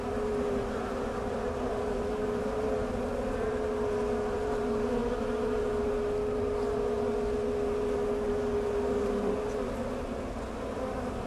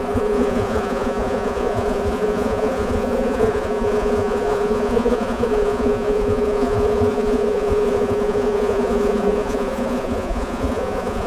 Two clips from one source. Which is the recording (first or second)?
first